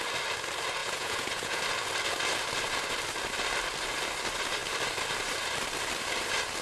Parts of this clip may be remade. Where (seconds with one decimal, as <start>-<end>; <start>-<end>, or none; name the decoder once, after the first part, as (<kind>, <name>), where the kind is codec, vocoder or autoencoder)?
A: 0.8-1.6 (vocoder, Vocos)